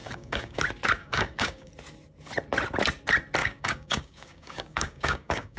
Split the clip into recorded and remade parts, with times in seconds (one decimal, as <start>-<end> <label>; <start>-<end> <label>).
0.0-0.6 remade; 0.6-1.0 recorded; 1.0-1.7 remade; 1.7-3.4 recorded; 3.4-5.6 remade